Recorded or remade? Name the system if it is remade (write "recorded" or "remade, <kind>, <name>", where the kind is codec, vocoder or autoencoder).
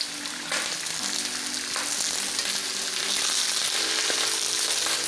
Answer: recorded